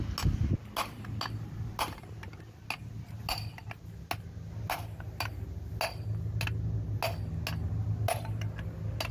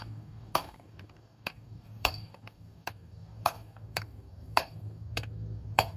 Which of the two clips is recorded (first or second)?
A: first